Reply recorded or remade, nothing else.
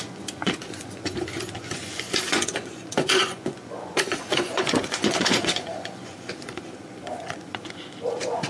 remade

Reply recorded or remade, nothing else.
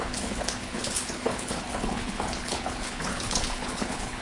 remade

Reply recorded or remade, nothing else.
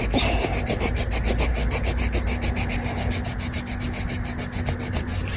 recorded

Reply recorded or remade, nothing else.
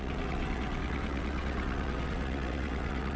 remade